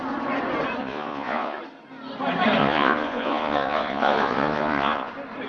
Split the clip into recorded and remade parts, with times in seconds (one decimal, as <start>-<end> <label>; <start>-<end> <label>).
0.0-0.8 recorded; 0.8-1.6 remade; 1.6-2.6 recorded; 2.6-5.1 remade; 5.1-5.5 recorded